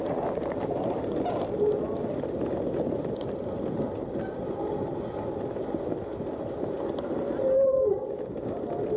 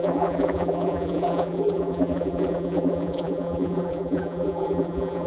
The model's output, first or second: second